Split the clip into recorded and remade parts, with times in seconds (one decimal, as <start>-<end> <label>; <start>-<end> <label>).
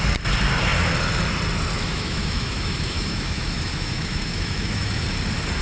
0.0-1.8 recorded; 1.8-5.0 remade; 5.0-5.6 recorded